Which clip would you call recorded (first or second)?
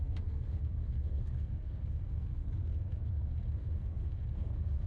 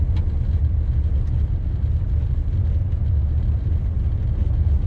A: second